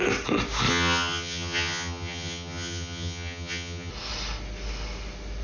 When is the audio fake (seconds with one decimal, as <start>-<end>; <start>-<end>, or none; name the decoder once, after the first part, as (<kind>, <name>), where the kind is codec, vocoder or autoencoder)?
0.7-3.9 (vocoder, HiFi-GAN)